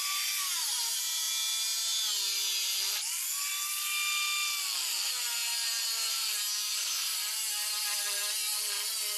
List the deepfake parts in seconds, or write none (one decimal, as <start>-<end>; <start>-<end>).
none